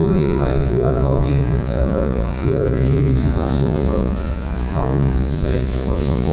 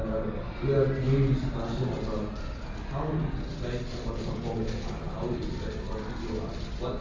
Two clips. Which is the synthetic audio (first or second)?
first